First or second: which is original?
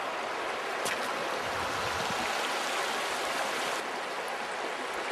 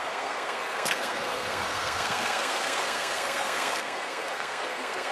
first